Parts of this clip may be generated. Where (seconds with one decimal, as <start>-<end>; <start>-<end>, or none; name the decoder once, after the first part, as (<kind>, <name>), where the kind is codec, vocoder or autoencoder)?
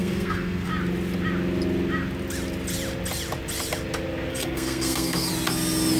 0.0-0.7 (codec, SNAC); 4.3-5.3